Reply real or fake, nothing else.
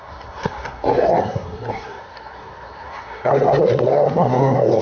fake